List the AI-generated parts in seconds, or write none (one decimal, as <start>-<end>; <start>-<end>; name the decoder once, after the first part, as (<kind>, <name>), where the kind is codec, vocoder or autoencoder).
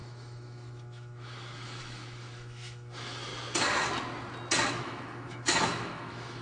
0.0-3.3 (autoencoder, DAC-VAE); 4.7-6.4